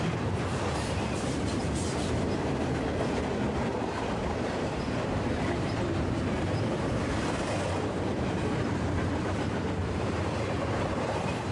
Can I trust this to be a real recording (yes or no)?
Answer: no